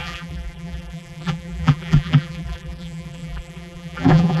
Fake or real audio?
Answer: fake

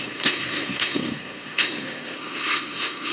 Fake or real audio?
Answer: fake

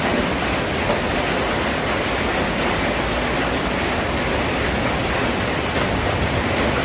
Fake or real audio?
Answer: real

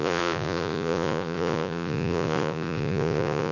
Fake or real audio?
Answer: fake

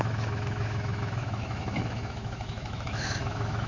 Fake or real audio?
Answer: fake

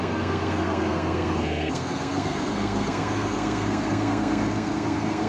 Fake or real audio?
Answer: fake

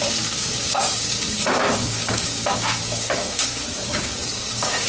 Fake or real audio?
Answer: fake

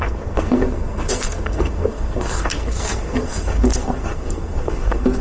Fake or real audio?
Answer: fake